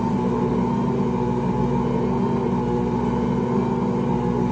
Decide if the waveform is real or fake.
real